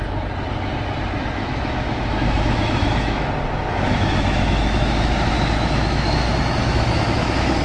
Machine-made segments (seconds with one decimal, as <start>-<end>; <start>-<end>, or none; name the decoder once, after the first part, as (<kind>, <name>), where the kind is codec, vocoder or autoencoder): 1.4-3.3 (autoencoder, DAC-VAE); 3.7-7.6